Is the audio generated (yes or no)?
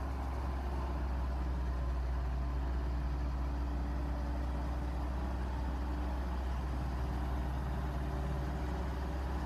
no